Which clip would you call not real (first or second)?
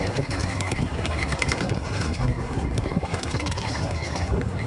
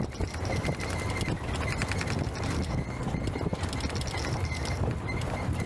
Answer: first